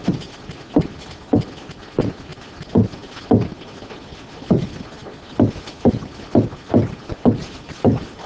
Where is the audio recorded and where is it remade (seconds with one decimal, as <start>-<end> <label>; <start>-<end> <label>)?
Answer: 0.0-8.3 recorded